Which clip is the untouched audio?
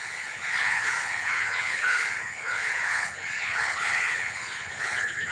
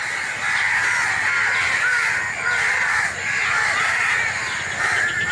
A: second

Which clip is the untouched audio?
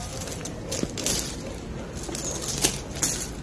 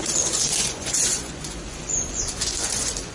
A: first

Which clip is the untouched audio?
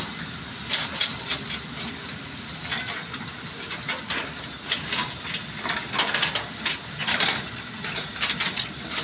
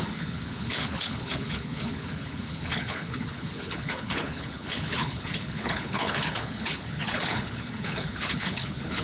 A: first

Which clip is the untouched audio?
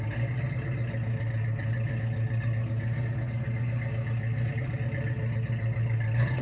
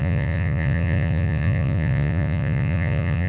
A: first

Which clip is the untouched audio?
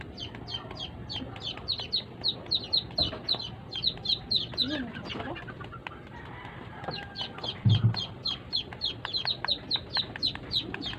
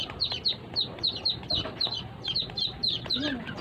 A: first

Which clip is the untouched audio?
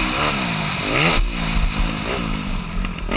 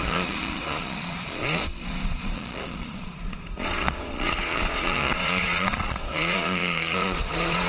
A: first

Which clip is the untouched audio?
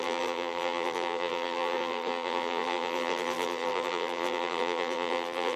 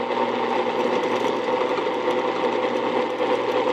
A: second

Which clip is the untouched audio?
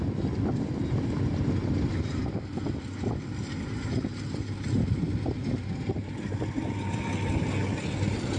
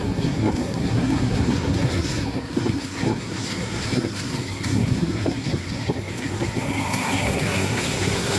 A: first